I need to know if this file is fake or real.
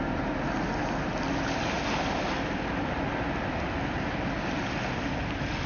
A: real